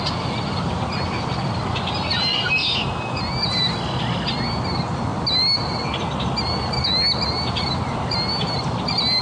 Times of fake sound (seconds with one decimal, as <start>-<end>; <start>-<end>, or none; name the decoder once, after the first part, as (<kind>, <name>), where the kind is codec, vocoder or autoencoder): none